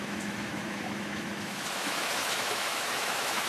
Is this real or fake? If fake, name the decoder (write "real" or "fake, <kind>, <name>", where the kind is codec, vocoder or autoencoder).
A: fake, autoencoder, DAC-VAE